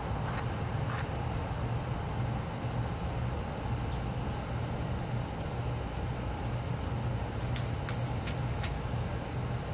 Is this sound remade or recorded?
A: recorded